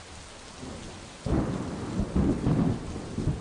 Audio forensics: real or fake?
real